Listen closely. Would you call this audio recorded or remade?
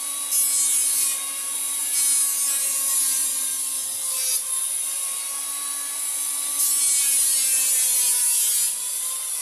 recorded